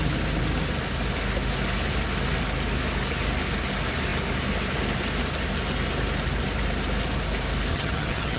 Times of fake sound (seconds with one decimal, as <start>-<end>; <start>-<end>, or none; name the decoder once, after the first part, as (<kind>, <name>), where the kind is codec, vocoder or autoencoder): 7.7-8.4 (vocoder, HiFi-GAN)

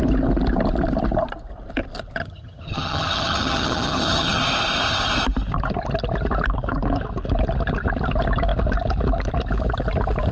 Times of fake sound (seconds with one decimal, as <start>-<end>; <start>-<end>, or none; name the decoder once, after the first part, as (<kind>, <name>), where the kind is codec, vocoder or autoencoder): 2.2-4.4 (vocoder, HiFi-GAN)

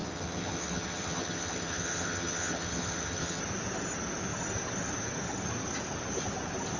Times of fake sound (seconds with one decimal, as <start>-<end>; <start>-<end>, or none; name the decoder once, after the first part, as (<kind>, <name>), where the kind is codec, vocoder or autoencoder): 0.0-3.4 (vocoder, HiFi-GAN)